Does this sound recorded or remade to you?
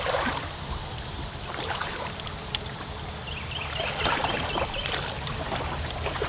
recorded